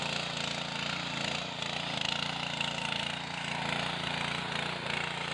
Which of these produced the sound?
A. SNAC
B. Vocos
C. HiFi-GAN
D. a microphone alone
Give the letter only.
D